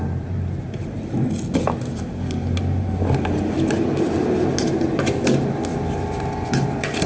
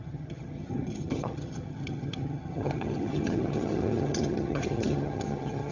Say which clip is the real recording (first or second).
first